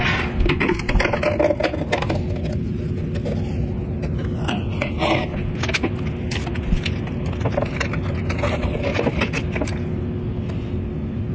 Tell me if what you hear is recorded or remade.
recorded